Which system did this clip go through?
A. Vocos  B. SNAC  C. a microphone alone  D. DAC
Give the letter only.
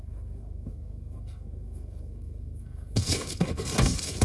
B